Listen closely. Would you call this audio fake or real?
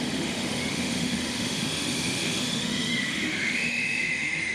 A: fake